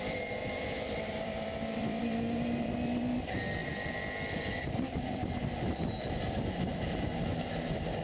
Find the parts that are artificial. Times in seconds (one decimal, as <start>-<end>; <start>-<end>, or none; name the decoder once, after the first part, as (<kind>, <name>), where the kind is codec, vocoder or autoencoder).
0.0-3.6 (vocoder, BigVGAN v2); 4.6-8.0